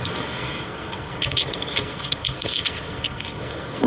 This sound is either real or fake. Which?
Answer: fake